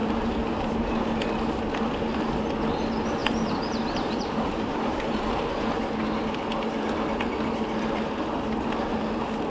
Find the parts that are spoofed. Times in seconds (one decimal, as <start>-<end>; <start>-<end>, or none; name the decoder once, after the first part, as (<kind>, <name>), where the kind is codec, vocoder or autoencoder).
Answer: 0.0-1.0 (vocoder, BigVGAN v2); 3.2-5.7